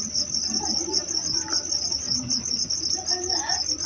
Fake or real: real